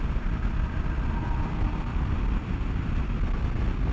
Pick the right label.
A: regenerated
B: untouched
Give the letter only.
B